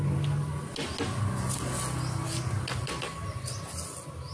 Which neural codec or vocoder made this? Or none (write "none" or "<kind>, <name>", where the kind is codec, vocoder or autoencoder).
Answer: none